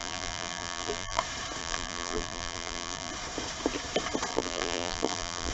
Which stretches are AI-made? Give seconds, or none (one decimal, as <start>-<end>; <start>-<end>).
0.0-1.2; 1.6-3.1; 4.3-5.5